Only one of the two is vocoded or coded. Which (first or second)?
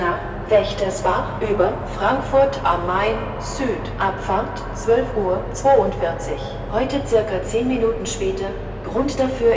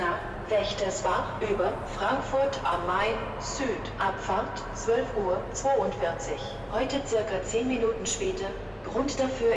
second